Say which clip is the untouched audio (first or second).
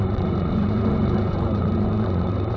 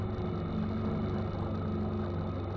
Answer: second